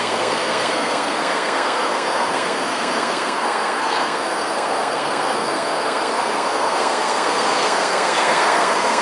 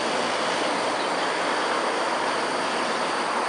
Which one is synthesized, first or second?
first